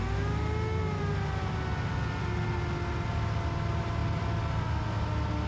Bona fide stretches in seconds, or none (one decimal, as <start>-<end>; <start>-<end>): 0.0-5.5